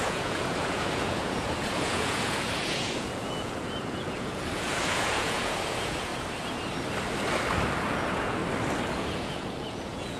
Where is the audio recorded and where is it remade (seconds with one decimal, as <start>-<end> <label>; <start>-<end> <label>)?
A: 0.0-6.1 remade; 6.1-7.8 recorded; 7.8-8.4 remade; 8.4-9.0 recorded; 9.0-10.2 remade